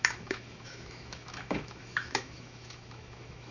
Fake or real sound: fake